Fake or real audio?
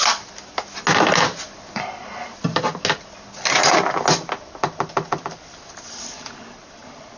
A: real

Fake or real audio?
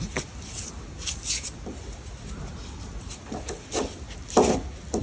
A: real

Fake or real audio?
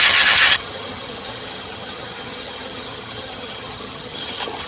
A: fake